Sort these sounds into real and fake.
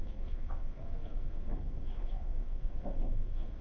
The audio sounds fake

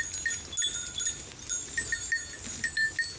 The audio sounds real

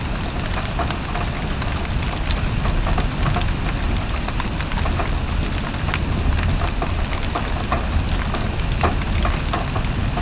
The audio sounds real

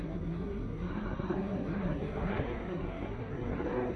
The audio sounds fake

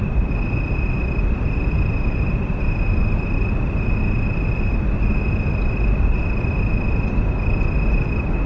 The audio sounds real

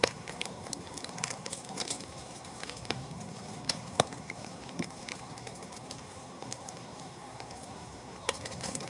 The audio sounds fake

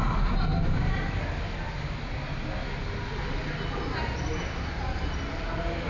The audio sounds real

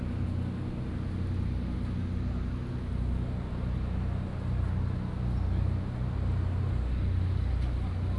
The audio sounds real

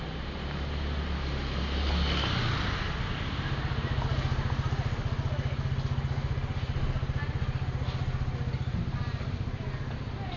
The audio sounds real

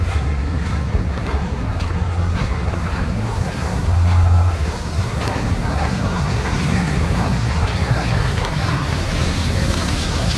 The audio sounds fake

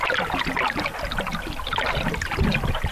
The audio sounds real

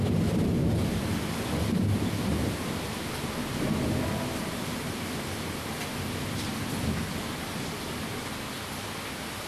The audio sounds real